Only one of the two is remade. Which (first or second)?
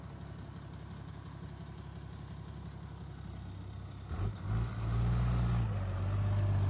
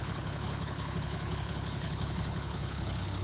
second